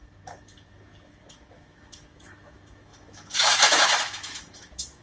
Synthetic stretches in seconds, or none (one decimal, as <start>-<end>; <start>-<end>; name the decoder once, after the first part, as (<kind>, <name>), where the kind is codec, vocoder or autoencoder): 0.0-5.0 (autoencoder, DAC-VAE)